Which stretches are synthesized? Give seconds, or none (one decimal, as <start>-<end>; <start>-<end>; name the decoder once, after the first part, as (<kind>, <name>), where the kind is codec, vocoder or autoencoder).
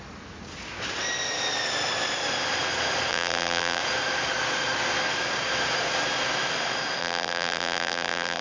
3.1-3.8 (vocoder, BigVGAN v2); 7.0-8.4